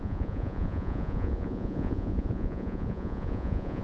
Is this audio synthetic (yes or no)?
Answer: yes